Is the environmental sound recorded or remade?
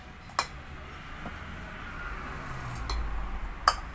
recorded